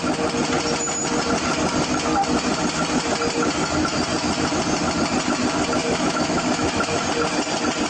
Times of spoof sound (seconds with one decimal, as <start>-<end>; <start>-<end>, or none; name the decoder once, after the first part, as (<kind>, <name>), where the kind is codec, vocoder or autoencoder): 5.8-7.0 (autoencoder, DAC-VAE)